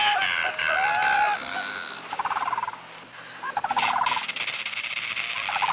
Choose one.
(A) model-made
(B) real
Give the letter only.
B